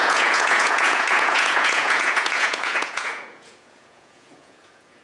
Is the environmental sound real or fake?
fake